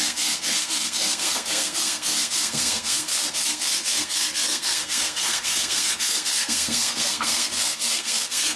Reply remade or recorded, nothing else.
remade